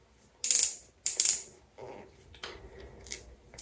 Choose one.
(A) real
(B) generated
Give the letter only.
A